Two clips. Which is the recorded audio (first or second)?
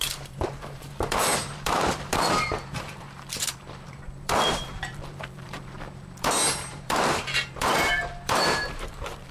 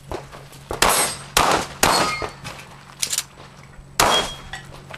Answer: second